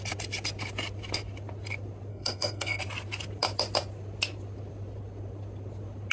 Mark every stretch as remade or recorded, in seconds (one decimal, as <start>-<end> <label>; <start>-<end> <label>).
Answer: 0.0-2.1 recorded; 2.1-2.8 remade; 2.8-6.1 recorded